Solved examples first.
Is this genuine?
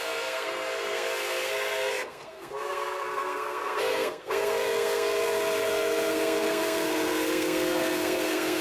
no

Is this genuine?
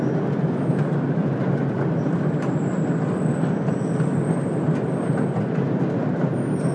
yes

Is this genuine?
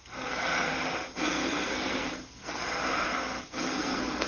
no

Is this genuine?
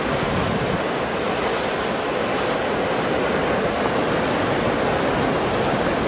yes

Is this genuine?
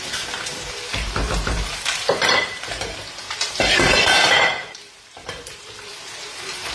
no